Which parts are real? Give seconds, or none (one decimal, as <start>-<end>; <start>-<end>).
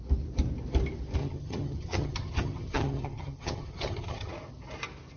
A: 0.0-1.2; 4.3-5.2